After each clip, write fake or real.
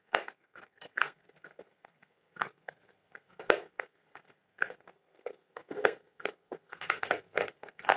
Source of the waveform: fake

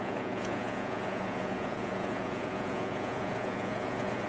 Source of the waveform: fake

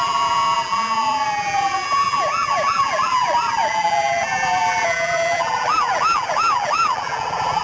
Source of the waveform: fake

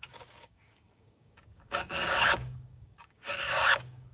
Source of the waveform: fake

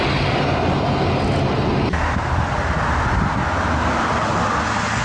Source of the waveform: real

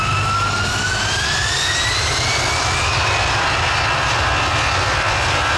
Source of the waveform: real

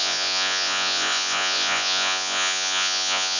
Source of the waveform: fake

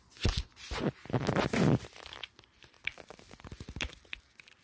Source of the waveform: real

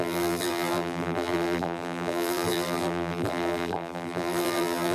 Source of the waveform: fake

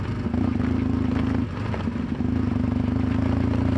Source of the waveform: real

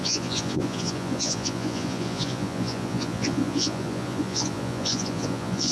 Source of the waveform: fake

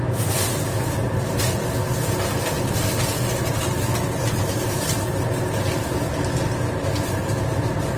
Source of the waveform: real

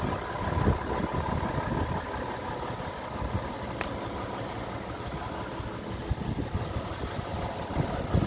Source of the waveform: real